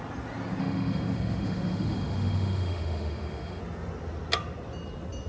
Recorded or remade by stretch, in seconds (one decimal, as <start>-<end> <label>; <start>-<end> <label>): 0.0-0.6 recorded; 0.6-3.6 remade; 3.6-5.3 recorded

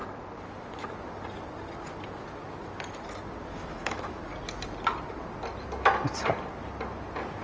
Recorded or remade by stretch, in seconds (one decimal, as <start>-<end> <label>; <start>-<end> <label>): 0.0-3.5 recorded; 3.5-4.2 remade; 4.2-7.4 recorded

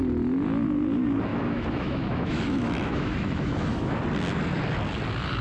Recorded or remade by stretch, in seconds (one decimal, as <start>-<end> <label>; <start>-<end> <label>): 0.0-1.3 recorded; 1.3-4.0 remade; 4.0-5.4 recorded

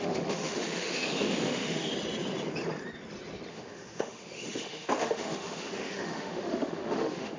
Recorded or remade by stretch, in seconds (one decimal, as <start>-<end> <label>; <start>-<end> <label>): 0.0-1.9 remade; 1.9-3.5 recorded; 3.5-7.4 remade